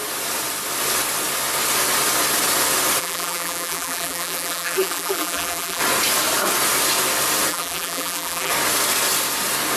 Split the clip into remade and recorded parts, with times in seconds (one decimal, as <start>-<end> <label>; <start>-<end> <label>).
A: 0.0-3.0 recorded; 3.0-5.8 remade; 5.8-7.5 recorded; 7.5-8.5 remade; 8.5-9.8 recorded